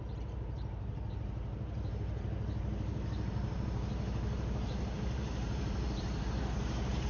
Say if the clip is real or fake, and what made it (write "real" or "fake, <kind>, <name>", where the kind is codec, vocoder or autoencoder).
fake, vocoder, BigVGAN v2